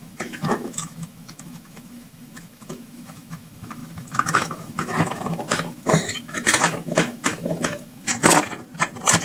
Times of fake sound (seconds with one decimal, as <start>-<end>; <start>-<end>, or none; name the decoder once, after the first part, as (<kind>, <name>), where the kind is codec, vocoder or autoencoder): 0.0-8.1 (autoencoder, DAC-VAE)